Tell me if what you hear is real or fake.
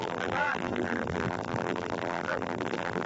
fake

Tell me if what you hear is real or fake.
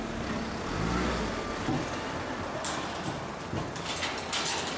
real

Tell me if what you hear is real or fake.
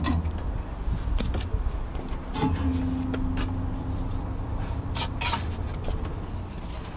real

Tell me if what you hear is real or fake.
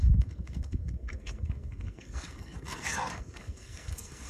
fake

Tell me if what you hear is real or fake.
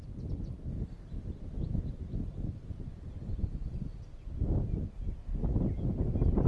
fake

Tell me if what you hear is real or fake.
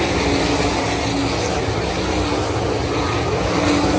real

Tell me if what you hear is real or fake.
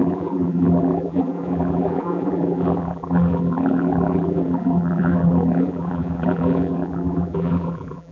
fake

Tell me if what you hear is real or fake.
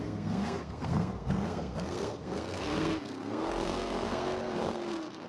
fake